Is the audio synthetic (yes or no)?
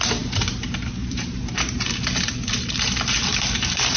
yes